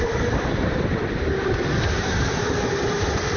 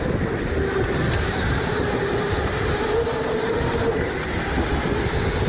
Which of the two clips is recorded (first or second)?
second